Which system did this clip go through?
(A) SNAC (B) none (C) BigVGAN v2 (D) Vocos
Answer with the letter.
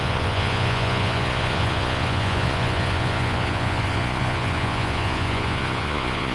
D